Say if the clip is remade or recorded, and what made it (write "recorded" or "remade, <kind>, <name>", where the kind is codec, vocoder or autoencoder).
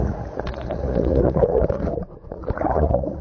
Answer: remade, vocoder, Vocos